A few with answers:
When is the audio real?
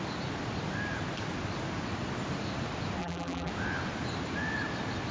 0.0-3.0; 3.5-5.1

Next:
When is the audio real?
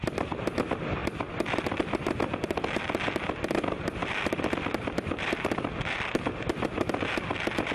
0.0-4.0; 6.2-7.7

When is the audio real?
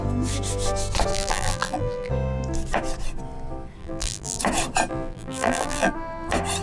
0.0-1.1; 2.1-3.8; 4.4-4.9; 5.9-6.6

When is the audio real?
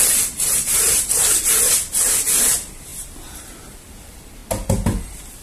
1.8-2.5; 2.9-3.4; 4.4-5.0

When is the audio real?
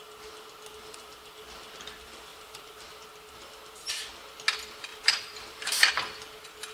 0.0-2.3; 2.9-4.9; 5.9-6.7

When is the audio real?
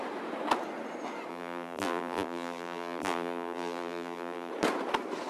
0.0-1.3; 4.5-5.3